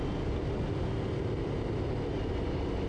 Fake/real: real